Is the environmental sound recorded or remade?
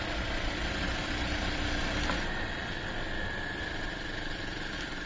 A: recorded